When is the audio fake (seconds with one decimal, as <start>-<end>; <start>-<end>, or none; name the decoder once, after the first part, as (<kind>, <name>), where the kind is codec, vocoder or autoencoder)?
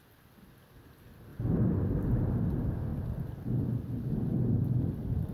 none